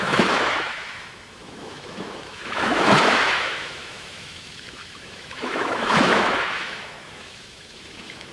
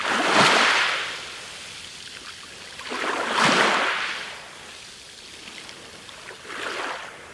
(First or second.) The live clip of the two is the second